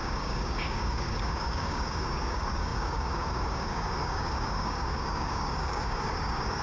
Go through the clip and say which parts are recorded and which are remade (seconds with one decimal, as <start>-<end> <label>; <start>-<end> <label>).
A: 0.0-6.6 remade

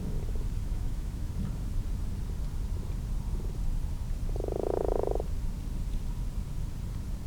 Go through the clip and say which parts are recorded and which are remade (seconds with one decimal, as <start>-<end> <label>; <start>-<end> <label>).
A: 0.0-0.6 recorded; 0.6-1.3 remade; 1.3-7.3 recorded

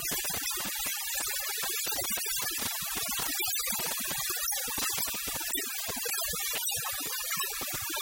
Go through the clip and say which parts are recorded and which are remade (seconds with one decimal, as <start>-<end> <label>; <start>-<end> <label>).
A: 0.0-6.4 recorded; 6.4-7.6 remade; 7.6-8.0 recorded

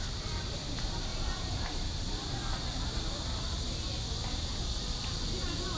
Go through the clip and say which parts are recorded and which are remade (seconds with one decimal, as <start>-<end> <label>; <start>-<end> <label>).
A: 0.0-1.1 recorded; 1.1-4.6 remade; 4.6-5.8 recorded

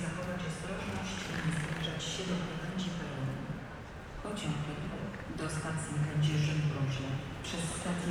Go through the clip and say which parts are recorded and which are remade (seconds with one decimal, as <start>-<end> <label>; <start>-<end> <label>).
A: 0.0-8.1 recorded

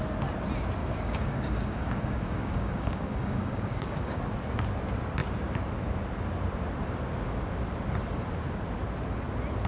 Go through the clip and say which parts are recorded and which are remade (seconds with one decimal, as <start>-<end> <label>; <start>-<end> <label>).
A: 0.0-0.8 recorded; 0.8-4.2 remade; 4.2-9.7 recorded

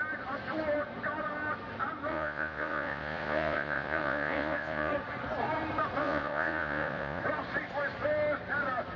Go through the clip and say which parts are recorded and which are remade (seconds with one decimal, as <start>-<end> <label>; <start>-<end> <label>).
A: 0.0-2.1 recorded; 2.1-4.9 remade; 4.9-6.0 recorded; 6.0-7.2 remade; 7.2-9.0 recorded